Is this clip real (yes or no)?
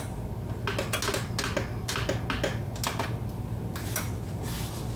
yes